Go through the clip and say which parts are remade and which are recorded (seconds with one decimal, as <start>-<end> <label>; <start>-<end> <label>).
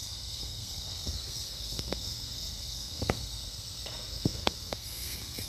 0.0-5.5 remade